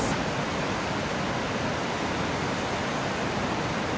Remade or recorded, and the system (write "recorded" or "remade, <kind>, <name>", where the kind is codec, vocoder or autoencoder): recorded